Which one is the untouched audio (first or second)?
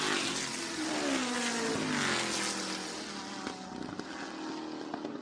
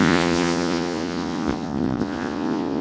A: first